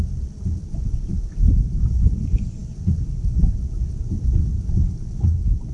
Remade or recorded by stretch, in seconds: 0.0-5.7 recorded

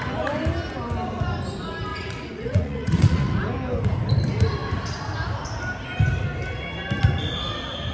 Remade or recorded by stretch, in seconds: 0.0-1.9 recorded; 1.9-3.4 remade; 3.4-7.9 recorded

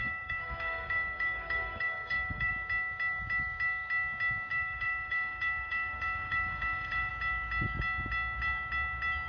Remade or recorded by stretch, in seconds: 0.0-2.5 remade; 2.5-4.5 recorded; 4.5-7.1 remade; 7.1-9.3 recorded

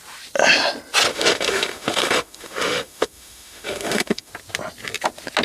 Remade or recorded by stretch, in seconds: 0.0-1.1 recorded; 1.1-4.3 remade; 4.3-5.4 recorded

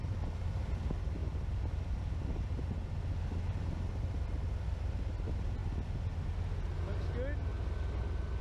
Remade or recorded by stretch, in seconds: 0.0-8.4 recorded